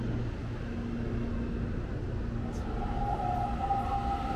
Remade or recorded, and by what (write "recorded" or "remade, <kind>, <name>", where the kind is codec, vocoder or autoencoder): recorded